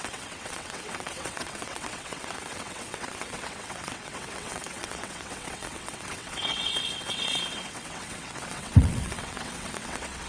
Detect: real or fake fake